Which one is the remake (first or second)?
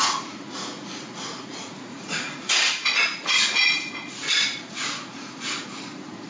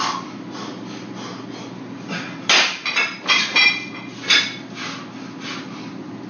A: first